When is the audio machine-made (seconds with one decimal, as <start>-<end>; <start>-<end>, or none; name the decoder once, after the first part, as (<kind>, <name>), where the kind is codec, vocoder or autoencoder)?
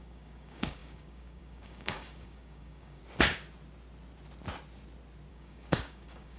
0.0-3.0 (codec, DAC); 5.3-6.4